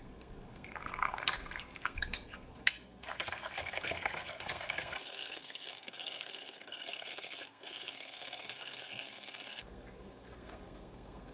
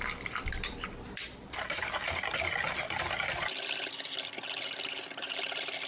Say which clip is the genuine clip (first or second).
second